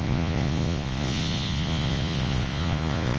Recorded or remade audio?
remade